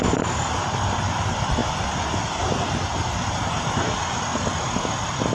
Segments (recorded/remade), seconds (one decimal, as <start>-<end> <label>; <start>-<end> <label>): 0.0-5.3 remade